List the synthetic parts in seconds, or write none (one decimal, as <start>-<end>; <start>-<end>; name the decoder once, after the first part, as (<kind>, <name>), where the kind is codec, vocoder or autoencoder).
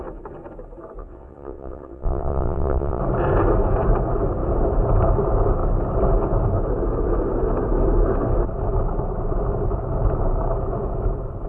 1.0-3.0 (vocoder, WaveNeXt)